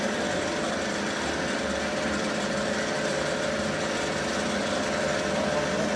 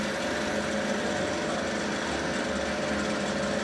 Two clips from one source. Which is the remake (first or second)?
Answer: first